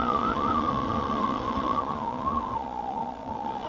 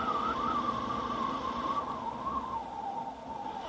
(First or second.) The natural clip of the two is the second